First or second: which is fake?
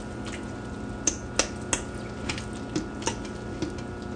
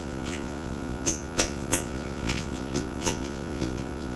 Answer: second